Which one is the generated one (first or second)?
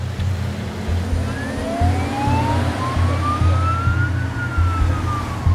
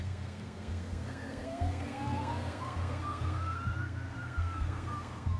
second